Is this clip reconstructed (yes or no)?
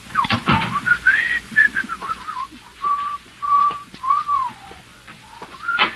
yes